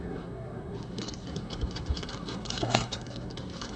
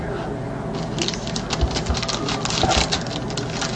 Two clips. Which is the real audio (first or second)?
second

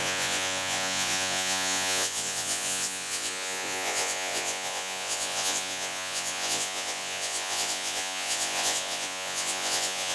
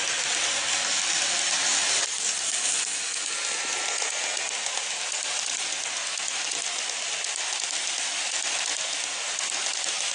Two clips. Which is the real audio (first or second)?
second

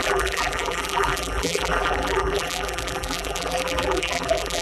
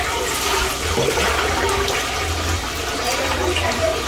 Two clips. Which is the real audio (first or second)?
second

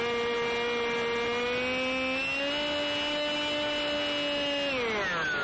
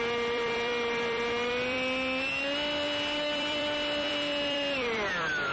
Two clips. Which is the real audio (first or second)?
first